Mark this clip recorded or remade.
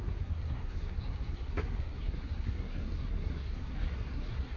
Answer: remade